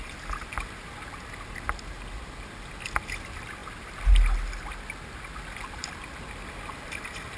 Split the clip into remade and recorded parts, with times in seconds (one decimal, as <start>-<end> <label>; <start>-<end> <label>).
0.0-7.4 recorded